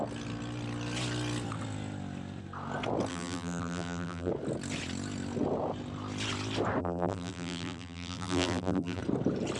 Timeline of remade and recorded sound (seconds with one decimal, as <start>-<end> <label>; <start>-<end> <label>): 0.0-3.1 recorded; 3.1-4.3 remade; 4.3-6.8 recorded; 6.8-9.0 remade; 9.0-9.6 recorded